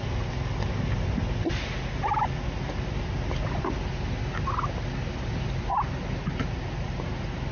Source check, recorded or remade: recorded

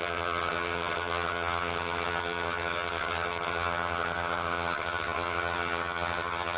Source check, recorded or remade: remade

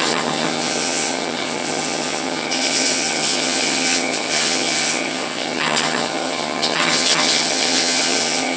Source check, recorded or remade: remade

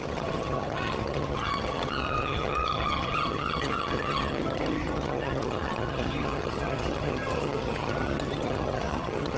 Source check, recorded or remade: remade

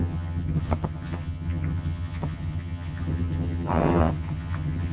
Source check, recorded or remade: remade